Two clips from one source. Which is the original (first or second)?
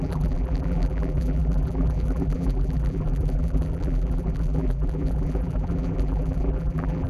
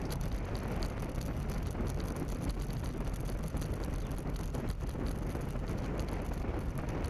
second